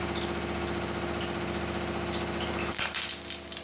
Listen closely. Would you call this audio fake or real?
real